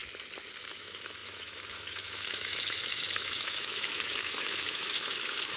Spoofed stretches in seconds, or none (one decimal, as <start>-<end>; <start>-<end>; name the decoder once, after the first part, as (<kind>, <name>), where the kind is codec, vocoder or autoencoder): 0.7-5.6 (autoencoder, DAC-VAE)